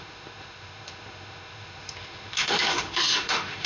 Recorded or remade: remade